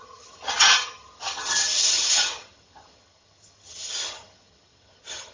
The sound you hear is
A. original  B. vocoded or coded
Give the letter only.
B